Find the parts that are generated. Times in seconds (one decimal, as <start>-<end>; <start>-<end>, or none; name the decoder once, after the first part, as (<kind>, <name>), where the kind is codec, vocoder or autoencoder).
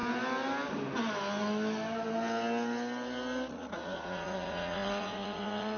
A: 3.5-5.8 (vocoder, Vocos)